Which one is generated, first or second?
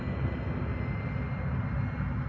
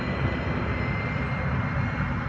second